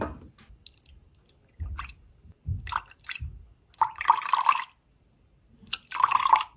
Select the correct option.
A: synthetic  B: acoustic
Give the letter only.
B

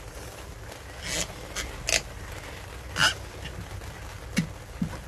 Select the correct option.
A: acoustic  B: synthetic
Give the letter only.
A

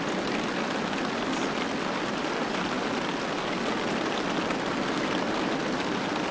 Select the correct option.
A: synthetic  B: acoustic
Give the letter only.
B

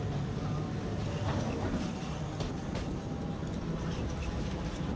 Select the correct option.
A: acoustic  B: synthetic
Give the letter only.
A